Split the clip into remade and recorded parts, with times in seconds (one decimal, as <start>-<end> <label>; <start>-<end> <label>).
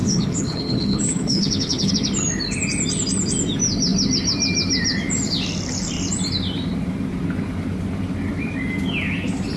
0.0-1.9 remade; 1.9-9.6 recorded